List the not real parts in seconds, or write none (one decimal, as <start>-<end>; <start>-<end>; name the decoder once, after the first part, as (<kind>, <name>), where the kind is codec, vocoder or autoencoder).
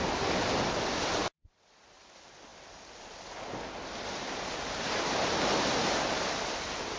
none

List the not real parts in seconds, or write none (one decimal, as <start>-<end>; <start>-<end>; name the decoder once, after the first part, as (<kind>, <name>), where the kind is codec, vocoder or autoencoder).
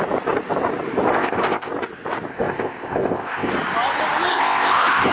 1.1-1.7 (codec, ZipCodec); 2.3-3.5; 4.3-5.1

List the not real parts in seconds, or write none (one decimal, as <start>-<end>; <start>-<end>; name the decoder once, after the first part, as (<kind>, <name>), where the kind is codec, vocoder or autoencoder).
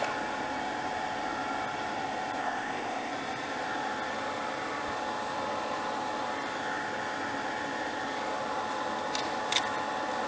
2.4-3.1 (codec, ZipCodec)